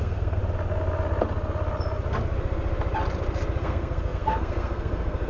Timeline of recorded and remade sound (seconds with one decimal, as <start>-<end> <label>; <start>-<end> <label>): 0.0-0.4 remade; 0.4-3.6 recorded; 3.6-5.3 remade